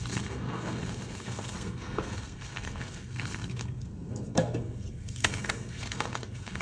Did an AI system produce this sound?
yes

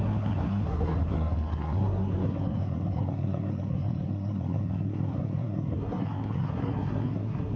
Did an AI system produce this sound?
yes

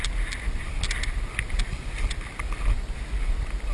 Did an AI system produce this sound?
no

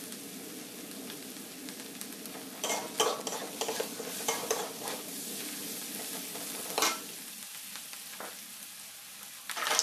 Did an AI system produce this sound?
no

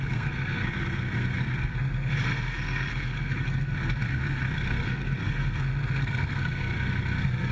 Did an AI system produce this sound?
yes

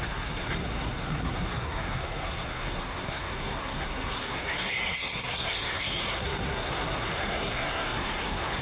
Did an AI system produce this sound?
yes